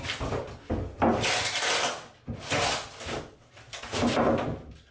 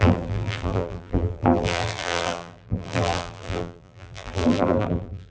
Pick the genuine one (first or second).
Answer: first